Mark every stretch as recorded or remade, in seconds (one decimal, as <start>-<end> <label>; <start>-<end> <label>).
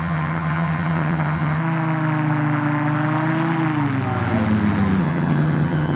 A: 0.0-1.6 remade; 1.6-5.0 recorded; 5.0-6.0 remade